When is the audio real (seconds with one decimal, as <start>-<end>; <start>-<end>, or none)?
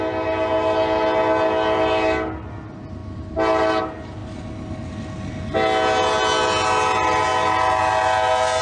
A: 0.0-8.6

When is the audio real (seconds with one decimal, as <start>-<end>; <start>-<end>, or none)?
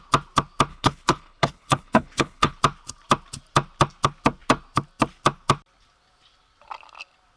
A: 0.0-0.7; 2.6-7.4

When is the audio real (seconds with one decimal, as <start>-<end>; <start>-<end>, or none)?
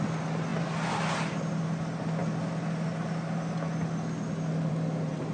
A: 0.0-5.3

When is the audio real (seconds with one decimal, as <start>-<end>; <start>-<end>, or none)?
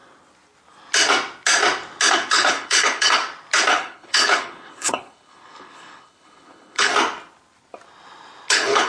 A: 0.0-2.1; 3.2-3.7; 6.9-8.5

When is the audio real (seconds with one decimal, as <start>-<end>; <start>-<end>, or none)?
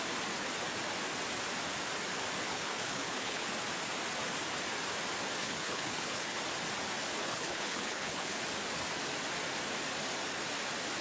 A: 0.0-2.5; 3.5-5.4; 6.4-7.2; 8.4-11.0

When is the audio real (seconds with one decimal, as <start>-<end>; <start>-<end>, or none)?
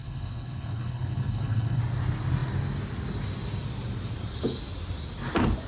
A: 1.8-5.7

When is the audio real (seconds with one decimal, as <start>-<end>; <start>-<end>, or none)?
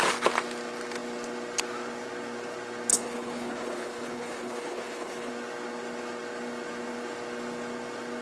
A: 0.0-2.9; 5.3-8.2